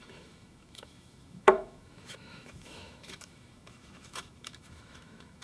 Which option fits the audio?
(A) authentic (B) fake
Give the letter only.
B